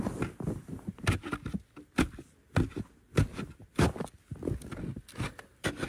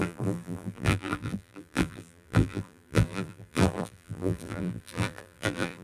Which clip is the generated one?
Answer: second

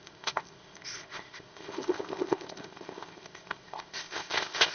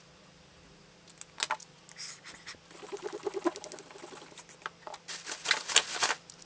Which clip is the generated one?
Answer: first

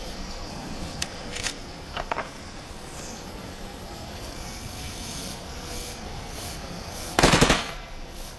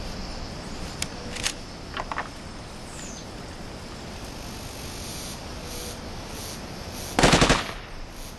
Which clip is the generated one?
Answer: first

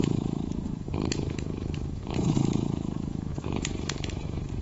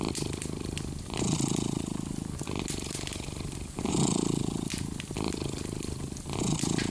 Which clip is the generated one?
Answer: first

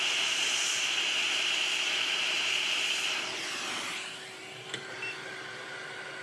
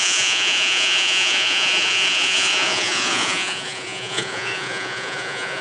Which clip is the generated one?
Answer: second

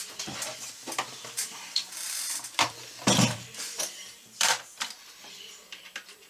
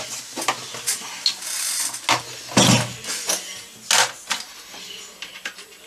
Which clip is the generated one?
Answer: first